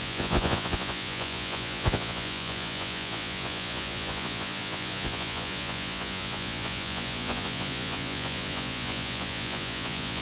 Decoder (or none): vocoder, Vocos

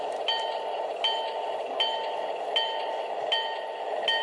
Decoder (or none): none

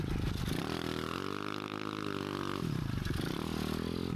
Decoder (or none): vocoder, BigVGAN v2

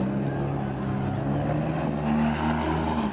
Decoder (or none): none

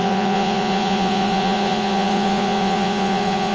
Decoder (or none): vocoder, Vocos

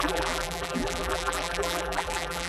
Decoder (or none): vocoder, BigVGAN v2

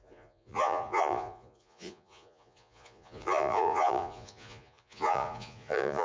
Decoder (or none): vocoder, Vocos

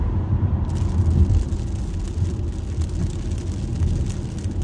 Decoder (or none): none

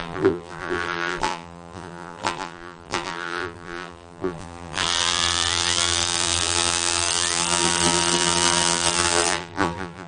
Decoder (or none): vocoder, BigVGAN v2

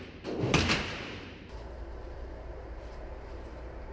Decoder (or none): vocoder, BigVGAN v2